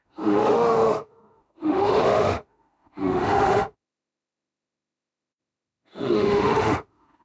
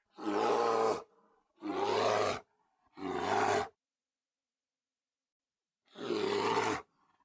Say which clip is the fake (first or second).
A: first